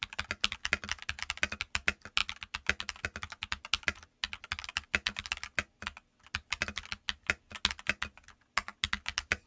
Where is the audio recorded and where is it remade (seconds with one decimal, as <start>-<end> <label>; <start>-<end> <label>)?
0.0-9.5 recorded